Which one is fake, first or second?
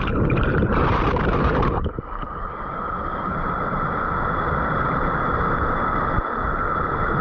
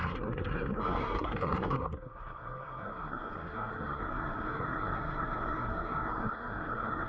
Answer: second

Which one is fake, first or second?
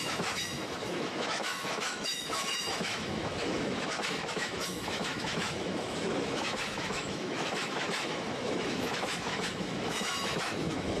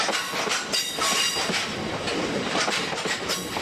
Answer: first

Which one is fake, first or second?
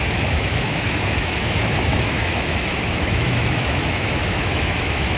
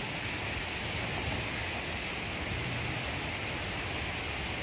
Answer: first